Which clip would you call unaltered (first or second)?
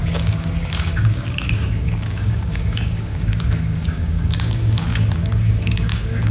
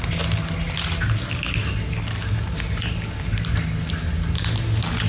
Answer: second